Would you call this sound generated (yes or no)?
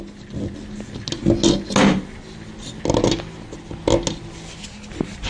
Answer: no